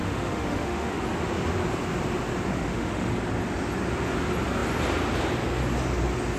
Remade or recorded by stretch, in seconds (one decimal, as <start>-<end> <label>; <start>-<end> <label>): 0.0-1.0 remade; 1.0-2.5 recorded; 2.5-3.1 remade; 3.1-6.4 recorded